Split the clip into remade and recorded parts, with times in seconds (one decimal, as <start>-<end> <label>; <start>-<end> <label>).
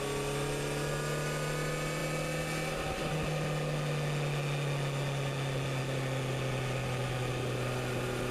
0.0-8.3 recorded